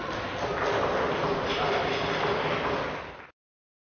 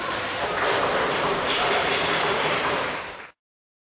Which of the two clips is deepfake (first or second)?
second